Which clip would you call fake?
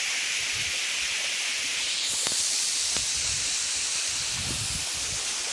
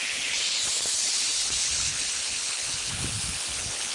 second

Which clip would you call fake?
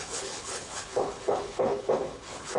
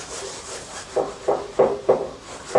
first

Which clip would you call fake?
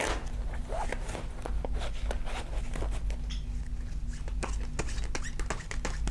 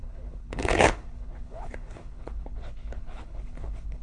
second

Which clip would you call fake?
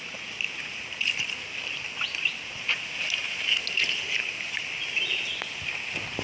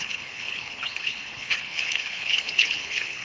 second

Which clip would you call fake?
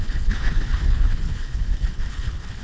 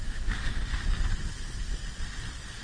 first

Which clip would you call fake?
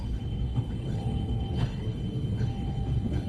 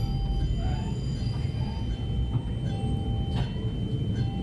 first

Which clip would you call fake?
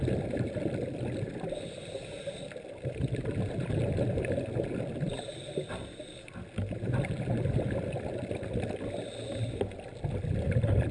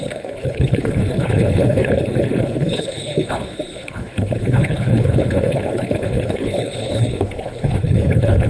second